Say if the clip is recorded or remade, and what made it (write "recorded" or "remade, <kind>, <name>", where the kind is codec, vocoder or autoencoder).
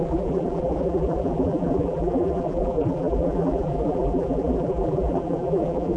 remade, vocoder, BigVGAN v2